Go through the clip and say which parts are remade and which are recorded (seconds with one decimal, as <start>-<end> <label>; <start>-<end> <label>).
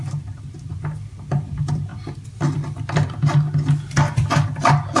0.0-1.9 remade; 1.9-5.0 recorded